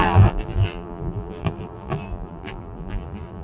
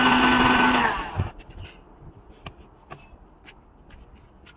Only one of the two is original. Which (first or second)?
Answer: second